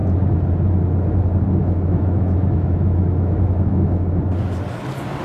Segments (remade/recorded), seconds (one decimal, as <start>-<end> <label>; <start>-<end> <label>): 0.0-1.6 recorded; 1.6-4.2 remade; 4.2-5.2 recorded